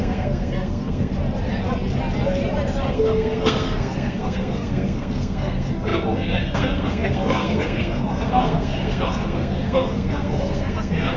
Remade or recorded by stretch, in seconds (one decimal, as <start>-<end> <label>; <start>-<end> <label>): 0.0-1.1 remade; 1.1-2.9 recorded; 2.9-11.2 remade